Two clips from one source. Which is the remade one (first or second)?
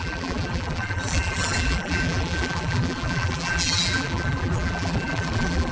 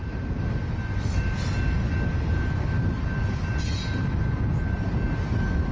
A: first